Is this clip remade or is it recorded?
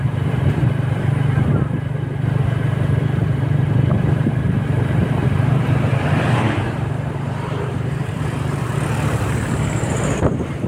remade